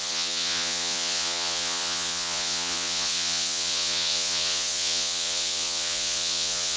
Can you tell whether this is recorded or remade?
remade